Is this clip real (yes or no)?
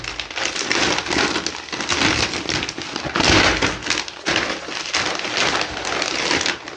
yes